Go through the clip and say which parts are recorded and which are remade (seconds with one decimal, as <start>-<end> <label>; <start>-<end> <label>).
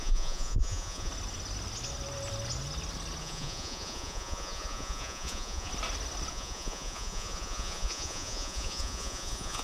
0.0-1.1 remade; 1.1-3.2 recorded; 3.2-5.7 remade; 5.7-6.3 recorded; 6.3-9.6 remade